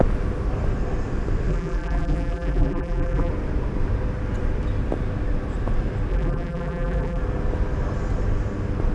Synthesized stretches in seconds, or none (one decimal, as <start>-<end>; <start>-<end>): 1.5-3.3; 6.1-7.2